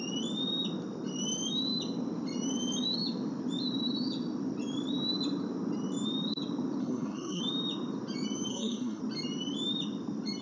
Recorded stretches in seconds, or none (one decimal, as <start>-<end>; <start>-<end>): 0.0-6.8; 7.4-8.5; 9.0-10.4